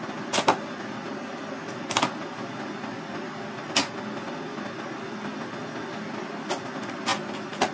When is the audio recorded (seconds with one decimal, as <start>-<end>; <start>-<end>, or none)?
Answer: 0.0-7.7

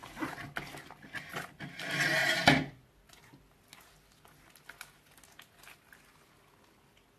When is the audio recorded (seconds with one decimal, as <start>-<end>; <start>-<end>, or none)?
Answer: 0.0-7.2

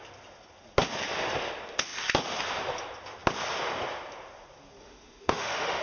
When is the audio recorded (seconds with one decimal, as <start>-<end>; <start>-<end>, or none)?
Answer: 0.0-4.8